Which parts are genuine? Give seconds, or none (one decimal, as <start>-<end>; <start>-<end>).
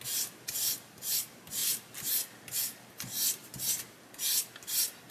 0.0-5.1